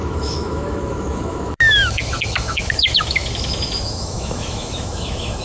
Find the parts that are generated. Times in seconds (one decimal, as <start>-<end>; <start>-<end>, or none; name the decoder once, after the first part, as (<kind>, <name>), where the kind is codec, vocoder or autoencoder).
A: 0.0-5.4 (autoencoder, DAC-VAE)